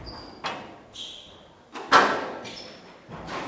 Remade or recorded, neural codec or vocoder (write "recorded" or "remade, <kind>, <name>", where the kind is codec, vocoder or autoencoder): recorded